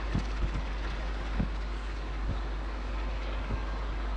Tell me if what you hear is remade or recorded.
remade